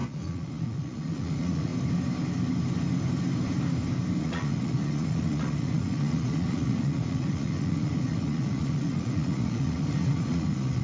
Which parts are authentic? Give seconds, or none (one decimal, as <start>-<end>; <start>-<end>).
1.7-4.2

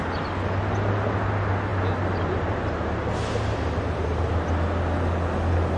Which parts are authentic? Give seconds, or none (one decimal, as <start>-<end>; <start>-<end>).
0.0-5.8

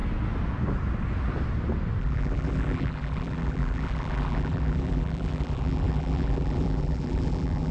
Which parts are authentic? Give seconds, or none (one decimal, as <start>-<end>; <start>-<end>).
0.0-2.0

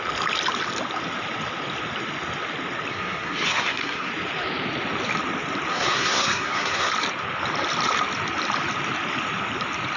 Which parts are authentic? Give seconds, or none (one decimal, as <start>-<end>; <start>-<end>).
0.0-2.9; 4.1-5.7; 6.9-10.0

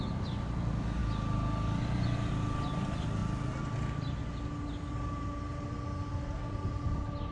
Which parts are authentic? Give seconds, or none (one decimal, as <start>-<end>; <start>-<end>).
0.0-7.3